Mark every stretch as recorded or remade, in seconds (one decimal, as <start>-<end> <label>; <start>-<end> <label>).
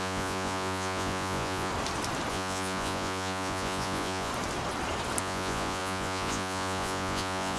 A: 0.0-1.7 remade; 1.7-2.3 recorded; 2.3-4.3 remade; 4.3-5.2 recorded; 5.2-7.6 remade